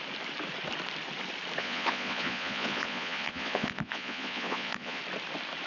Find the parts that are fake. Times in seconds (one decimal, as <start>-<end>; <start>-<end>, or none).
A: 1.6-5.0